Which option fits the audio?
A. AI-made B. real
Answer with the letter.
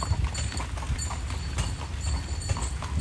B